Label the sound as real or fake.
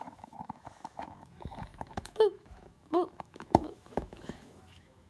fake